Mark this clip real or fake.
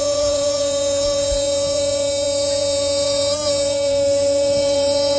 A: fake